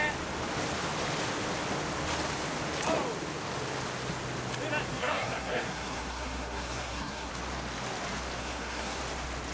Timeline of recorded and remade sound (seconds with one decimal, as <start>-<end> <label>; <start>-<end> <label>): 0.0-4.9 recorded; 4.9-7.3 remade; 7.3-8.4 recorded; 8.4-9.0 remade; 9.0-9.5 recorded